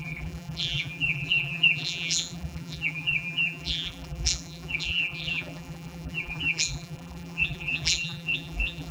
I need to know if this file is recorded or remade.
remade